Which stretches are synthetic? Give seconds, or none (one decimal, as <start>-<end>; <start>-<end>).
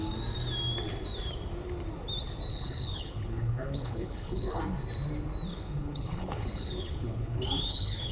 2.5-4.6; 5.5-8.1